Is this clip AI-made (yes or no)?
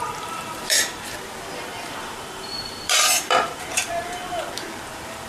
yes